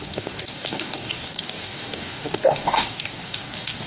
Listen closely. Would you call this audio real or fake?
fake